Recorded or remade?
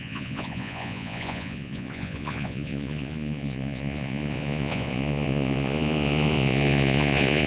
remade